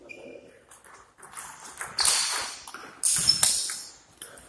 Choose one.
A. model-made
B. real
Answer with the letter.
B